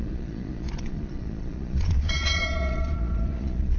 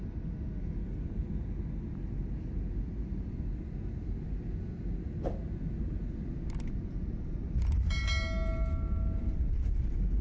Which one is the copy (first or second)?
first